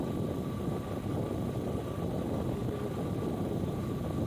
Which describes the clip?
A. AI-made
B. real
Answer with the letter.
B